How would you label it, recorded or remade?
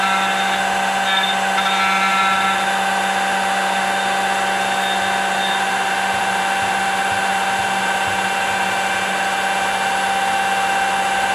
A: recorded